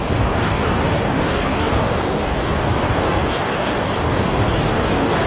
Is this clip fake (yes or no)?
yes